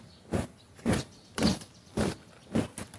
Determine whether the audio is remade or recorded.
recorded